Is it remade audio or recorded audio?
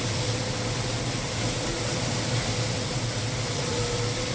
remade